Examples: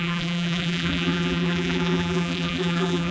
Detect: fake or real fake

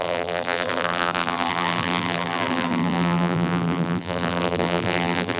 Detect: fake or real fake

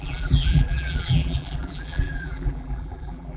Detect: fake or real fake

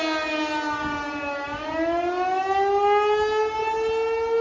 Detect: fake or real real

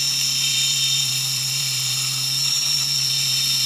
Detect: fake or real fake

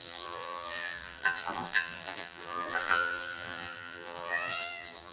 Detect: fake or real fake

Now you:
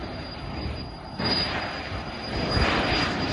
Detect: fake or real fake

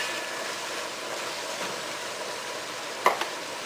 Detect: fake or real fake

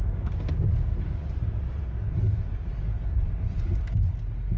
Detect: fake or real real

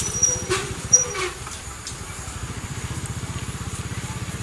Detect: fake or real fake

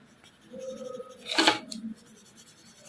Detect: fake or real real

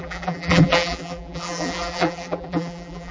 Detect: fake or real fake